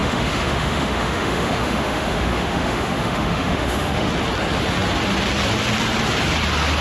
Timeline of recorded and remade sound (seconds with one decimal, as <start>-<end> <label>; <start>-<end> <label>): 0.0-4.1 remade; 4.1-6.8 recorded